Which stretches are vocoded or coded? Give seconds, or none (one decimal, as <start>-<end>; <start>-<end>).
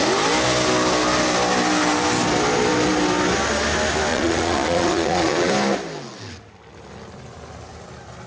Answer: 4.1-5.5